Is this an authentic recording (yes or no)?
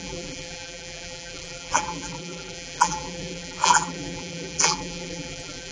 no